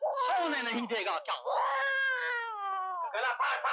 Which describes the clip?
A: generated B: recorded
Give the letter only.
B